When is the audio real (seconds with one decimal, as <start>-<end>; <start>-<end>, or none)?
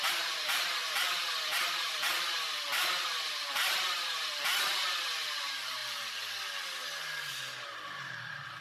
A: 5.8-7.3